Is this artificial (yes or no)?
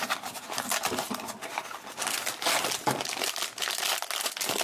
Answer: no